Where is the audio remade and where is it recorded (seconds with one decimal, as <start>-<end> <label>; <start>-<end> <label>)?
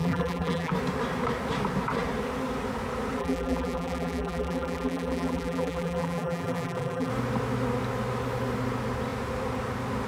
0.0-0.7 remade; 0.7-3.2 recorded; 3.2-7.1 remade; 7.1-10.1 recorded